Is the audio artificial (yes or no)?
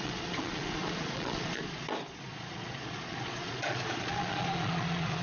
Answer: yes